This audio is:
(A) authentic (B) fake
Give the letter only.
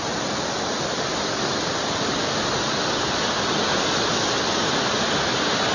A